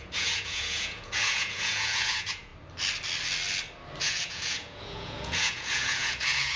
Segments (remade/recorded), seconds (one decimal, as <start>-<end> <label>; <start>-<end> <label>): 0.0-2.5 remade; 2.5-4.0 recorded; 4.0-6.6 remade